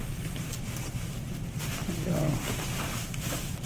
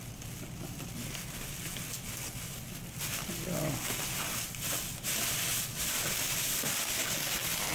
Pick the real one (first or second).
second